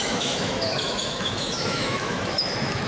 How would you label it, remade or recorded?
remade